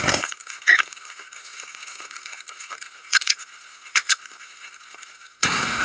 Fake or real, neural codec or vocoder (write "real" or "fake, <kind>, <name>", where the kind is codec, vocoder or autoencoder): fake, codec, SNAC